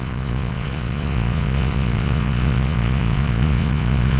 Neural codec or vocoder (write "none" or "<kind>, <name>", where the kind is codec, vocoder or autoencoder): vocoder, Vocos